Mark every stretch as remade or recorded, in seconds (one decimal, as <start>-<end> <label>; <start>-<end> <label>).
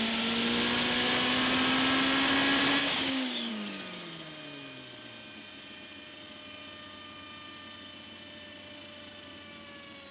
0.0-2.8 recorded; 2.8-3.5 remade; 3.5-10.1 recorded